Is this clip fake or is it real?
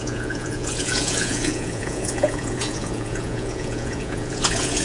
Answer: fake